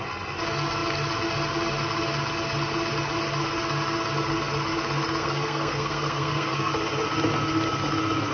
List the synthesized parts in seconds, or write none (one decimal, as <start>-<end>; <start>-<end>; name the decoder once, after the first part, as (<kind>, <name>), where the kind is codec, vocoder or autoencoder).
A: 5.2-6.7 (codec, SNAC)